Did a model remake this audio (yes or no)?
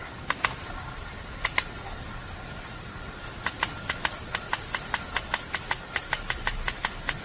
no